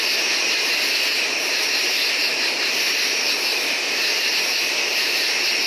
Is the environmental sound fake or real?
fake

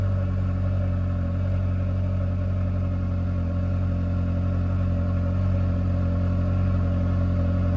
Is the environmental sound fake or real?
real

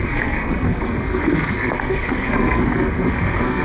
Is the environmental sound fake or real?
fake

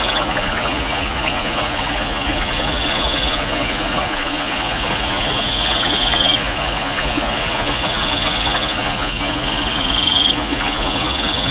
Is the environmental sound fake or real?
fake